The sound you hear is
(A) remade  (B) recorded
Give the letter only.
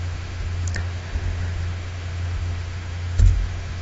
A